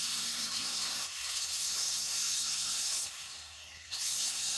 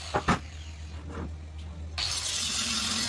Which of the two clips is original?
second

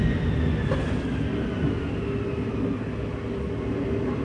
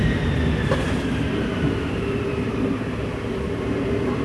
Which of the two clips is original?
first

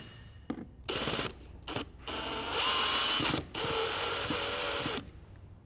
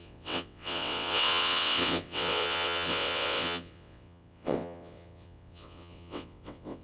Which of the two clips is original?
first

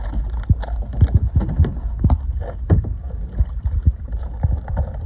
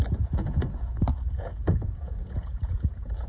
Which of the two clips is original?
first